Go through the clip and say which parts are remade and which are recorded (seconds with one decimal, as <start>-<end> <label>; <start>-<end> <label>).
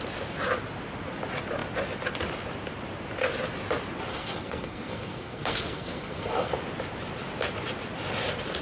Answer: 0.0-4.1 recorded; 4.1-6.5 remade; 6.5-8.6 recorded